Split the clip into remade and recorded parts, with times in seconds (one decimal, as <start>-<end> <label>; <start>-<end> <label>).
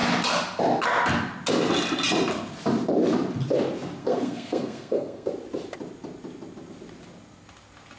0.0-4.0 recorded; 4.0-5.3 remade; 5.3-8.0 recorded